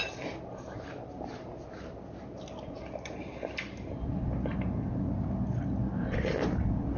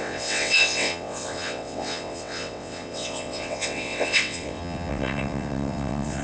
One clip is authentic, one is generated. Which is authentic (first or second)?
first